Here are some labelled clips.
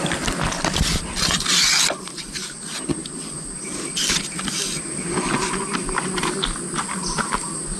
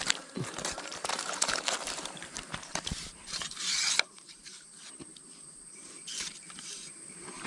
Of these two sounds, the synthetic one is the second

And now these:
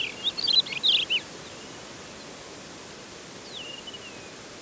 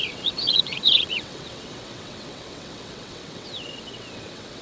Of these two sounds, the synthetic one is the second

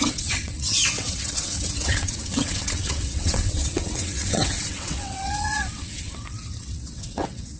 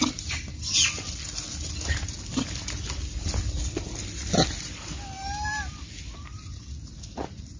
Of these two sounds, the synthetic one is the first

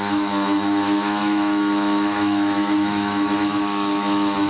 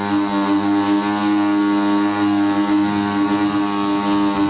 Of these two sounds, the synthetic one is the first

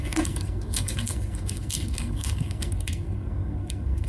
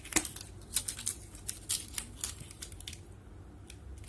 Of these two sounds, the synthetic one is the first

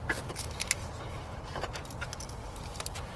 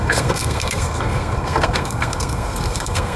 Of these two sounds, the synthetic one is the second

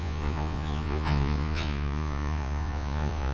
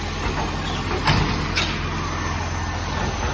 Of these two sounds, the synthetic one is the first